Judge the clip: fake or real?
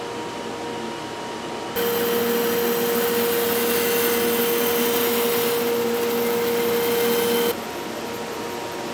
real